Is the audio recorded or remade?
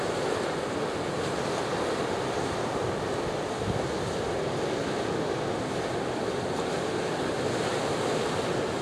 recorded